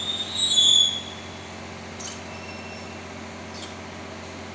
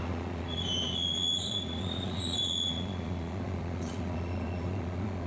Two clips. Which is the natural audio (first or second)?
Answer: first